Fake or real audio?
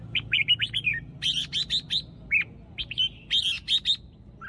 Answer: real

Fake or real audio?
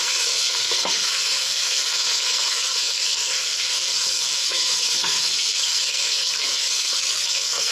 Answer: fake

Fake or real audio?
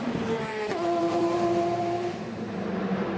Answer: fake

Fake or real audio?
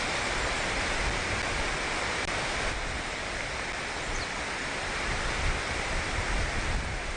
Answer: real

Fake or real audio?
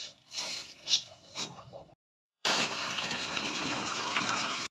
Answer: fake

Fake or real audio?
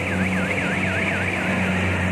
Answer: real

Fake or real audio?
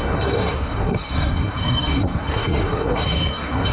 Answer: fake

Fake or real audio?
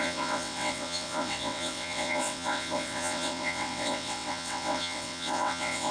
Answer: fake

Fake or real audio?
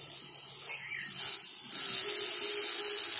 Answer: real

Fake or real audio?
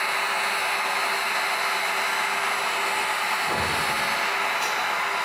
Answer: real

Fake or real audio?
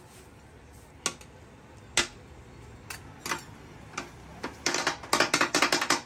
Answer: real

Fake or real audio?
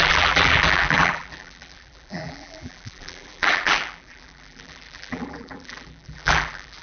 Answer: fake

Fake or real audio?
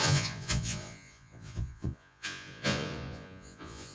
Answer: fake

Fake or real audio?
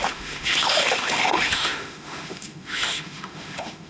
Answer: fake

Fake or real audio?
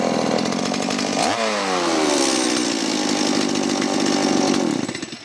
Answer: real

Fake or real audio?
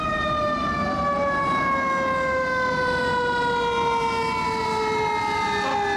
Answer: real